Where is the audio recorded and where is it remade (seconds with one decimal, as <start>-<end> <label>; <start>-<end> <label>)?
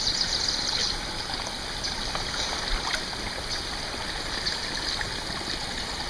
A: 0.0-6.1 recorded